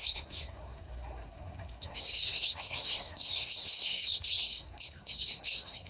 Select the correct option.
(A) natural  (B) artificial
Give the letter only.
B